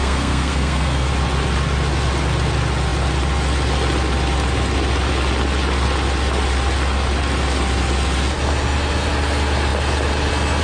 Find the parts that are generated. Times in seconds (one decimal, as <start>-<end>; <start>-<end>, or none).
0.0-1.1